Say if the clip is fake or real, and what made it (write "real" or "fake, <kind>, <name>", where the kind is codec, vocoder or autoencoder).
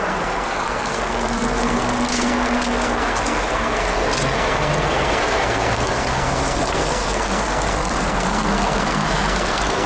fake, codec, SNAC